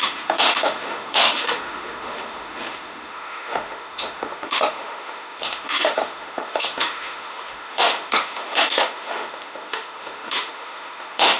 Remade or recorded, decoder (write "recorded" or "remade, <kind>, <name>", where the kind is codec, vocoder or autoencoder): remade, autoencoder, DAC-VAE